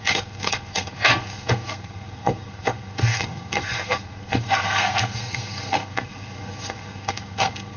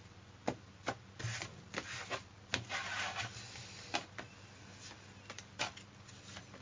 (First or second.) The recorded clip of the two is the second